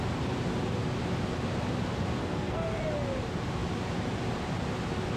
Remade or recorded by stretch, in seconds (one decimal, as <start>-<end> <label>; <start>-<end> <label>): 0.0-2.2 recorded; 2.2-2.8 remade; 2.8-5.2 recorded